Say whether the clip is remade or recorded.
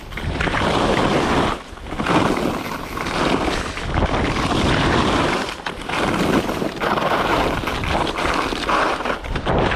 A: recorded